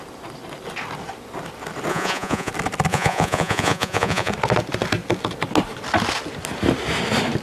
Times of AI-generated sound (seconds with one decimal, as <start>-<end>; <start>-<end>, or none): 1.9-2.5; 2.9-4.3